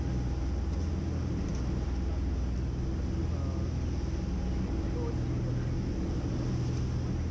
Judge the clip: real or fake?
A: real